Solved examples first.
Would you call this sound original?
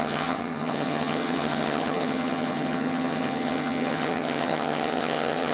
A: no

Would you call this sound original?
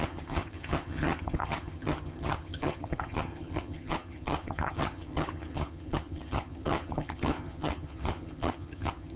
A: no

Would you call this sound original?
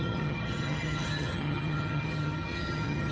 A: no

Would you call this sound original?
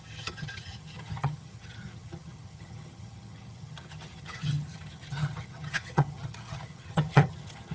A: no